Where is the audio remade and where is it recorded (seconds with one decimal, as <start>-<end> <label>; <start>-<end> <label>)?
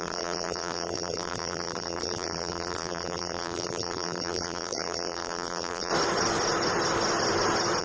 0.0-5.9 remade; 5.9-7.8 recorded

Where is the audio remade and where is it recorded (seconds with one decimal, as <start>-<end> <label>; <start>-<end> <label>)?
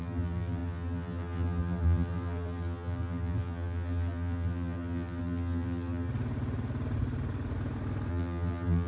0.0-6.1 remade; 6.1-8.1 recorded; 8.1-8.9 remade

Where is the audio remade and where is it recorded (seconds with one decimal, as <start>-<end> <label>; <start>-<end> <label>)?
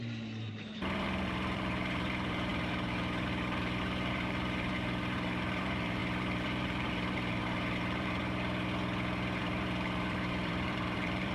0.0-8.2 remade; 8.2-9.4 recorded; 9.4-11.3 remade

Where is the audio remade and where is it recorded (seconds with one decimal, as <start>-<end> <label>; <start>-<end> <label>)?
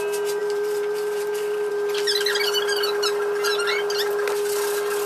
0.0-0.4 recorded; 0.4-1.7 remade; 1.7-5.1 recorded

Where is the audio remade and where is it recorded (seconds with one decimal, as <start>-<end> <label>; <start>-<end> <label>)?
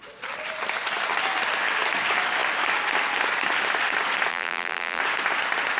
0.0-4.3 recorded; 4.3-5.0 remade; 5.0-5.8 recorded